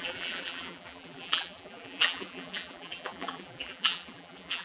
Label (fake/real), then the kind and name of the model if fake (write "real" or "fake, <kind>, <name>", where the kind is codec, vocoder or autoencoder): fake, vocoder, BigVGAN v2